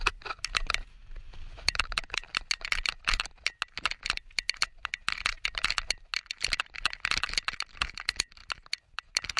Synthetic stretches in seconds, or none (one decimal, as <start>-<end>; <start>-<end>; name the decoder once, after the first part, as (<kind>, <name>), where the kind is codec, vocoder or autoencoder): 1.0-2.3 (vocoder, BigVGAN v2)